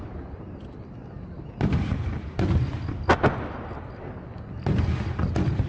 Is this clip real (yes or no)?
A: yes